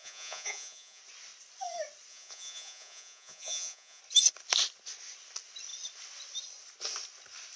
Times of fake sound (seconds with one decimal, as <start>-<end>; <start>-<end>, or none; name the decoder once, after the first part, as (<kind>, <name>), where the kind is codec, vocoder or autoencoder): 0.0-1.0 (vocoder, Vocos); 2.1-4.0